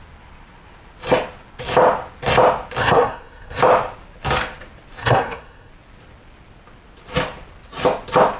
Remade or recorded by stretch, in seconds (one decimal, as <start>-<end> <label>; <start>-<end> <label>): 0.0-2.8 recorded; 2.8-3.6 remade; 3.6-5.0 recorded; 5.0-5.7 remade; 5.7-8.4 recorded